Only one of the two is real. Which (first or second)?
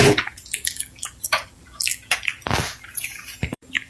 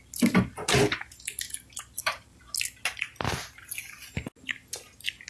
second